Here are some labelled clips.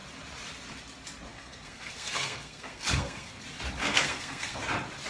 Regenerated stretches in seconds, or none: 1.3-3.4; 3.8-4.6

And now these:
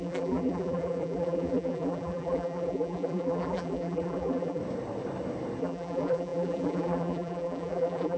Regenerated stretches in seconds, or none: 0.0-4.6; 5.6-8.2

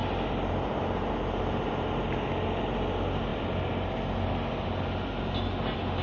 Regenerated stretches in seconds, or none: none

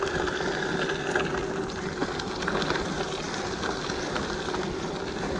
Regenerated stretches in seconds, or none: none

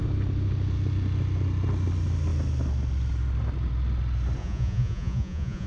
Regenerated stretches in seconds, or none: 4.4-5.7

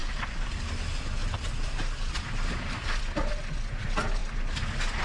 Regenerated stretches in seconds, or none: 0.0-0.6; 1.2-3.3

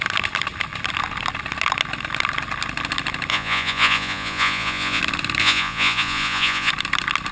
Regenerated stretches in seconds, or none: 3.3-5.0; 5.4-6.7